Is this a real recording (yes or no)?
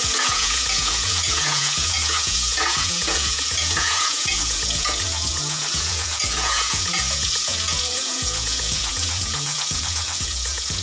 no